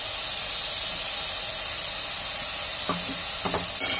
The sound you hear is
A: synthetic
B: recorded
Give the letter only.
B